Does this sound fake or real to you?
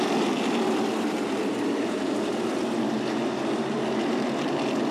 fake